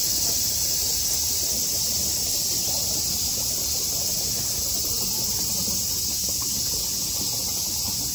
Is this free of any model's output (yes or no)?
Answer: yes